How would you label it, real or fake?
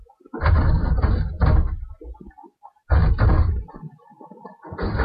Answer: real